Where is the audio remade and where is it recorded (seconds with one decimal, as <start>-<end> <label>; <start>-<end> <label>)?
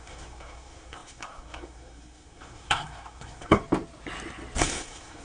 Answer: 0.0-3.6 remade; 3.6-4.6 recorded; 4.6-5.2 remade